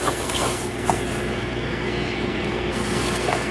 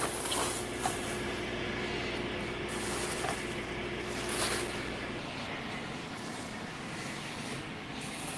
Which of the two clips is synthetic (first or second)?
first